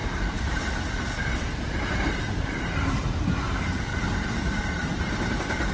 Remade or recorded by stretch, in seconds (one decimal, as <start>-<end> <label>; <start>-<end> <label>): 0.0-0.6 remade; 0.6-3.9 recorded; 3.9-5.7 remade

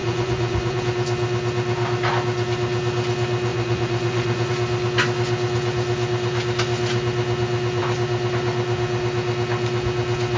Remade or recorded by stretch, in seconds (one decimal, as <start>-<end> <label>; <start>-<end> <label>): 0.0-0.8 remade; 0.8-3.5 recorded; 3.5-4.5 remade; 4.5-10.4 recorded

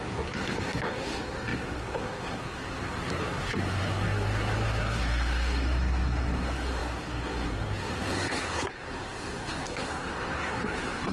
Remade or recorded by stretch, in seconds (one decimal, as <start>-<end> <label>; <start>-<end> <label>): 0.0-11.1 remade

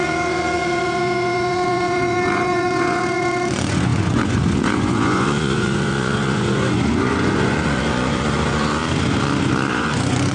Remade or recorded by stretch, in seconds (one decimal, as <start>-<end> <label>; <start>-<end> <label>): 0.0-8.8 remade; 8.8-9.7 recorded; 9.7-10.3 remade

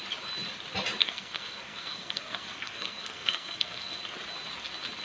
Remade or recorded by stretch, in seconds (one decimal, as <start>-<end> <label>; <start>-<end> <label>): 0.0-1.0 recorded; 1.0-4.0 remade; 4.0-5.0 recorded

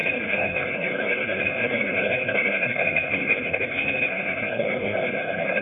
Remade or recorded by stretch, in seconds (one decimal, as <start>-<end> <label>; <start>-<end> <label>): 0.0-5.6 remade